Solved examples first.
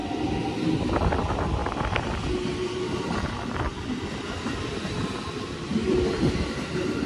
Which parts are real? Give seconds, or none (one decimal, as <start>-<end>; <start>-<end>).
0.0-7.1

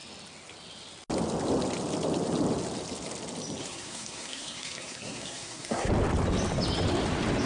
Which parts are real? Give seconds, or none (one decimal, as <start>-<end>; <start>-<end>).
0.0-3.6; 5.9-7.5

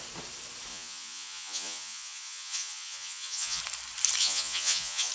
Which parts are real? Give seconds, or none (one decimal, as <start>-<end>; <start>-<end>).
0.0-0.7; 3.6-4.2

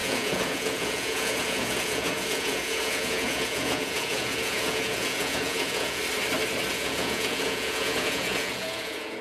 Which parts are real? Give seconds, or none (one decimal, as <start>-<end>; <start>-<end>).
6.0-6.7

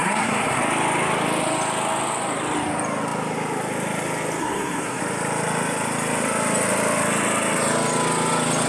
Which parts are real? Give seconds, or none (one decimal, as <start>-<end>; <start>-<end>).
0.6-4.4; 5.0-8.7